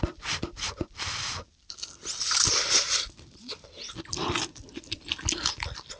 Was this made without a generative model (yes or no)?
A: yes